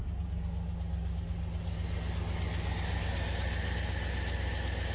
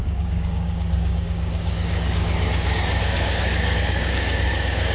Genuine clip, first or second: first